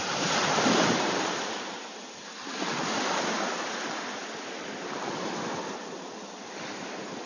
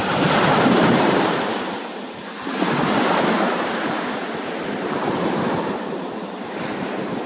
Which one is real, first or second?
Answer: first